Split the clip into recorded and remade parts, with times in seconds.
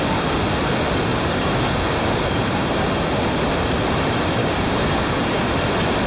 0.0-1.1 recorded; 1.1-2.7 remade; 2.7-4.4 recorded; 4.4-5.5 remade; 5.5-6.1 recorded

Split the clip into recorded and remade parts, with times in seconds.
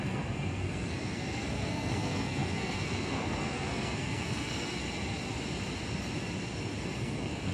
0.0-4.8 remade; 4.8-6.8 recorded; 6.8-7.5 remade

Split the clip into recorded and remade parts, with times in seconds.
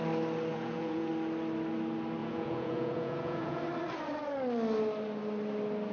0.0-0.5 recorded; 0.5-1.1 remade; 1.1-2.2 recorded; 2.2-3.6 remade; 3.6-5.9 recorded